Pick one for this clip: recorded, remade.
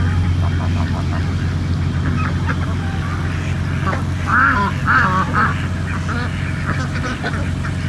recorded